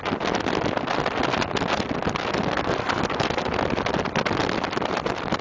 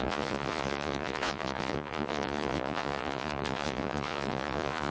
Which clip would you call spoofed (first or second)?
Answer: second